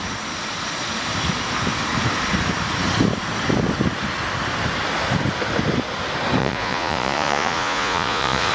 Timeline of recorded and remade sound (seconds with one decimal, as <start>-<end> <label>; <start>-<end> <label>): 0.0-6.4 recorded; 6.4-8.5 remade